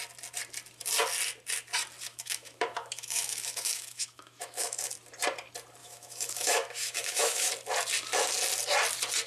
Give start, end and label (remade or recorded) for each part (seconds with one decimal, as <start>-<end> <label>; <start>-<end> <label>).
0.0-2.1 recorded; 2.1-4.9 remade; 4.9-5.8 recorded; 5.8-7.5 remade; 7.5-9.3 recorded